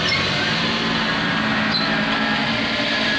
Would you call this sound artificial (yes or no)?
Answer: no